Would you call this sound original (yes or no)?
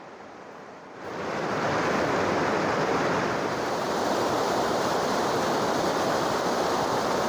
no